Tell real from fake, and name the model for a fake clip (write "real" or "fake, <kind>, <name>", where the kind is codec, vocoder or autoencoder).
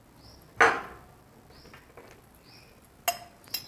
real